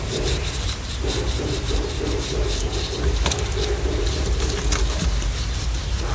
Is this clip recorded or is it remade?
remade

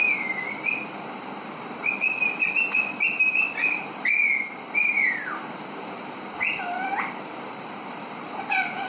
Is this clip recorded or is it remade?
remade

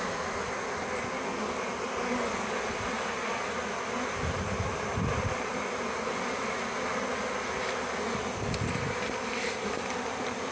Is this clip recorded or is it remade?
recorded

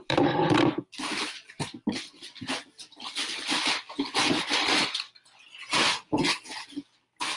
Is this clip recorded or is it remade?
recorded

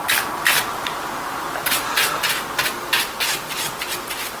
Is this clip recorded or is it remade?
recorded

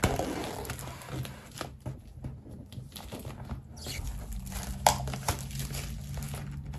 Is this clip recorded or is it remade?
recorded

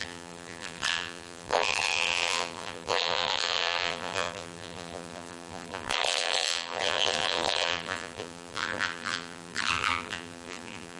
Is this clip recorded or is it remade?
remade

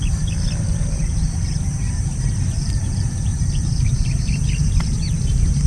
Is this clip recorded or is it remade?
remade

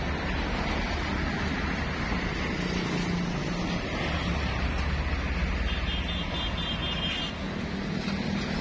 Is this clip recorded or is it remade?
recorded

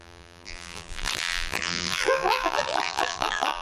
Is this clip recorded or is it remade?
remade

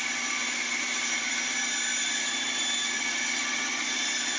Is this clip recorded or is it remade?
remade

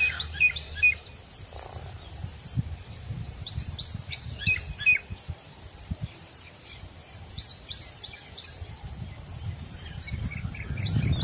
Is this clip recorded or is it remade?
remade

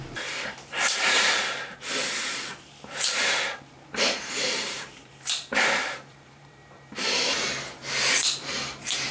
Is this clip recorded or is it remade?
remade